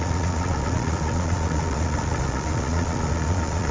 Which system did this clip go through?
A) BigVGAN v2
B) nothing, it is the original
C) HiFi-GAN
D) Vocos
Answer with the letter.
D